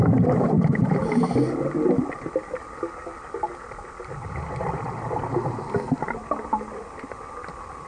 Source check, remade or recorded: recorded